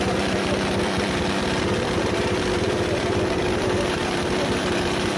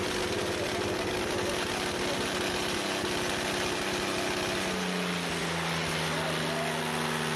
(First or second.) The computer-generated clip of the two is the first